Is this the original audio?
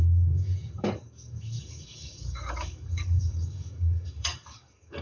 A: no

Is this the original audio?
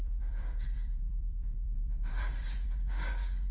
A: no